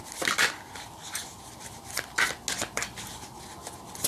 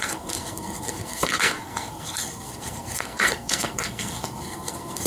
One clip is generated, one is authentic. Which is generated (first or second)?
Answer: second